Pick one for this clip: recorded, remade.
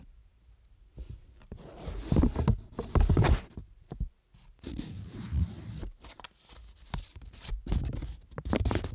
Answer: recorded